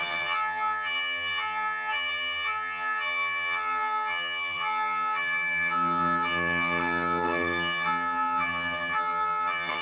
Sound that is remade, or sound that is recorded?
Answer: remade